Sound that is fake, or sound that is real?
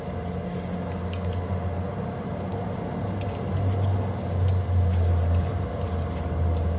real